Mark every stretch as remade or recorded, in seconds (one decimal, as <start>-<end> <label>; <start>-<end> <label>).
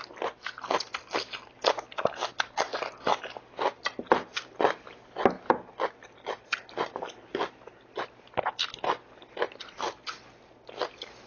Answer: 0.0-11.3 recorded